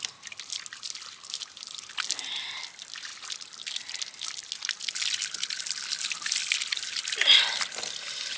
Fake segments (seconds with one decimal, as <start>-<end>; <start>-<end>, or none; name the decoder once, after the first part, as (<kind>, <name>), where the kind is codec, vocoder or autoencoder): none